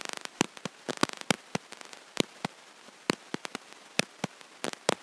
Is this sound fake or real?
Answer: real